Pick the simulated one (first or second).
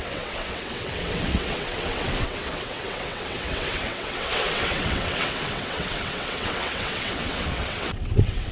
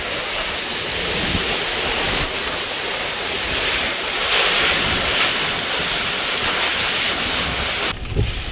first